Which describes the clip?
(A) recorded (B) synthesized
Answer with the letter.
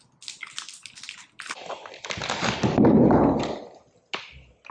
A